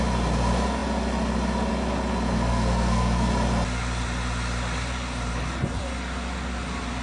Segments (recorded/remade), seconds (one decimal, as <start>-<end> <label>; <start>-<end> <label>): 0.0-2.5 recorded; 2.5-3.3 remade; 3.3-7.0 recorded